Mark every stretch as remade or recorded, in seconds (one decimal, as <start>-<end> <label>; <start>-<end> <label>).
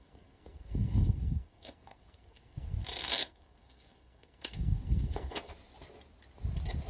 0.0-5.5 remade; 5.5-6.9 recorded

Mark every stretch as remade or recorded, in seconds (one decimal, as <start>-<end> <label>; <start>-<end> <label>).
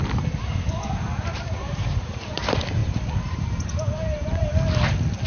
0.0-1.3 recorded; 1.3-2.4 remade; 2.4-2.8 recorded; 2.8-4.5 remade; 4.5-5.3 recorded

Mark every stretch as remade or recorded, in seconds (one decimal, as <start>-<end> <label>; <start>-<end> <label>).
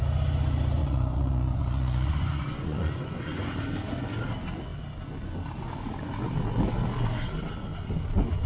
0.0-0.8 recorded; 0.8-3.5 remade; 3.5-8.5 recorded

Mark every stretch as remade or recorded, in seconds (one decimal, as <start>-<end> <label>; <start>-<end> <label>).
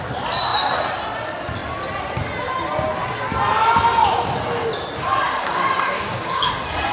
0.0-5.4 recorded; 5.4-6.5 remade; 6.5-6.9 recorded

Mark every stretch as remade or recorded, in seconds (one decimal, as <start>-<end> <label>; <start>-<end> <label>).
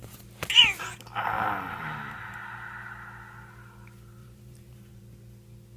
0.0-4.2 recorded; 4.2-5.0 remade; 5.0-5.8 recorded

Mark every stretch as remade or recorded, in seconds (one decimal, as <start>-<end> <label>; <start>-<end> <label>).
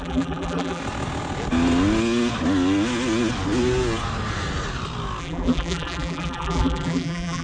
0.0-0.8 remade; 0.8-5.2 recorded; 5.2-7.4 remade